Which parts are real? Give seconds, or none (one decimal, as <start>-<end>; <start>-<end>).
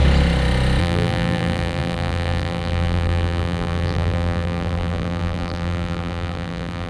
0.0-0.8